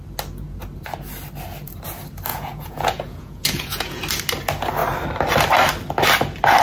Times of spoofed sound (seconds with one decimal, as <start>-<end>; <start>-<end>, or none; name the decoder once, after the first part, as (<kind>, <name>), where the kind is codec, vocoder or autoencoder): 2.3-4.0 (vocoder, Vocos)